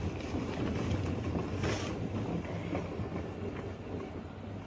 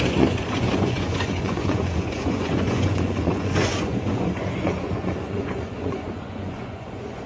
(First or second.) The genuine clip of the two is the first